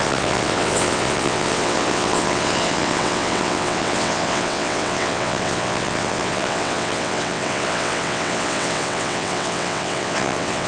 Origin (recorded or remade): remade